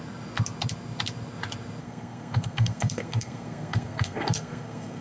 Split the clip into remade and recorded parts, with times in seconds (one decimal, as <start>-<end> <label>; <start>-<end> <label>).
0.0-1.8 recorded; 1.8-5.0 remade